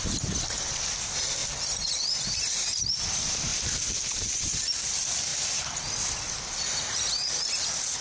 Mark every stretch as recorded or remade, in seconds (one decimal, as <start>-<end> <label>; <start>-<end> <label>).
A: 0.0-1.4 remade; 1.4-2.8 recorded; 2.8-3.5 remade; 3.5-4.4 recorded; 4.4-5.3 remade; 5.3-7.5 recorded; 7.5-8.0 remade